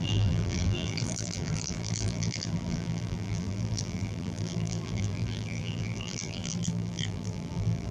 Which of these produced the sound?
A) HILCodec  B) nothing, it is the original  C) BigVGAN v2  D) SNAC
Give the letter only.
C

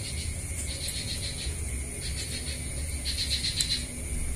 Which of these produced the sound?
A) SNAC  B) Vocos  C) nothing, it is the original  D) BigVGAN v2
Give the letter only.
C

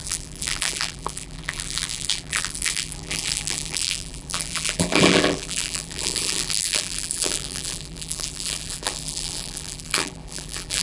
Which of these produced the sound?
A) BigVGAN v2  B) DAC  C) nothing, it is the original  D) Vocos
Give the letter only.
A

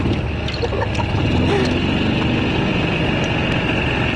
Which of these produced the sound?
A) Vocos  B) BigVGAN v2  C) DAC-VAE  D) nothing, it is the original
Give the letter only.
D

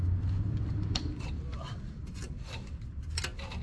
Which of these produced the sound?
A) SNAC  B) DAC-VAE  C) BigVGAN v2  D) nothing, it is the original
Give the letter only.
C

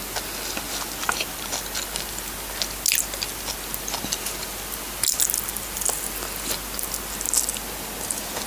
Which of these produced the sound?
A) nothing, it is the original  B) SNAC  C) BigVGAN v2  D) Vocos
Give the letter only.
A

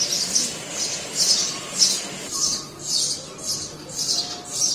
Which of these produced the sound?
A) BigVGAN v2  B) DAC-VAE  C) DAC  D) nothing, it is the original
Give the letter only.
D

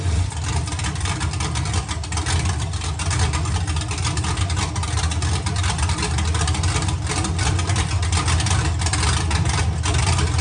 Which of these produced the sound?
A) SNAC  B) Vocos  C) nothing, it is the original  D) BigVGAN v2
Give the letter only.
C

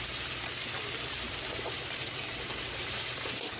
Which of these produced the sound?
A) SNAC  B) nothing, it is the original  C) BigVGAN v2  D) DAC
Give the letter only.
C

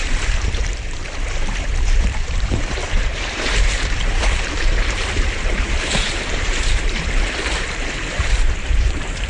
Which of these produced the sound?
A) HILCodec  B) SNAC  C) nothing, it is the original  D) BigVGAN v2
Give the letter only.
D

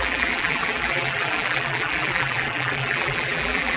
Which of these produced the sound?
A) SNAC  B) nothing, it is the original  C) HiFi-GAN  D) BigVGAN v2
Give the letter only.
D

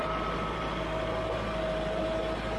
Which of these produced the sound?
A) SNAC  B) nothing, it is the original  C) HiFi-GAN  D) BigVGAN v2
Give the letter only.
D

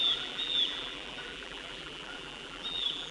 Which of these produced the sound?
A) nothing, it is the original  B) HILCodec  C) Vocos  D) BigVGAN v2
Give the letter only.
D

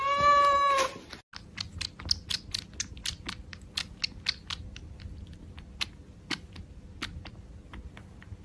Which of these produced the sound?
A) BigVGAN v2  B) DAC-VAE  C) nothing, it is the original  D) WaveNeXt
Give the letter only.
C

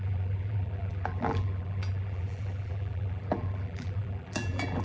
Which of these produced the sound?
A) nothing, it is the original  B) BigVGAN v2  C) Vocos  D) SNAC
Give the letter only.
B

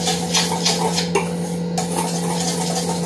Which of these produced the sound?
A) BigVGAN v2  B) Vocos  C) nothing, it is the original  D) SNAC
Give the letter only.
C